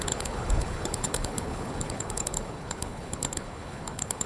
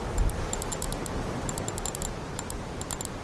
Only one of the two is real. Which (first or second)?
second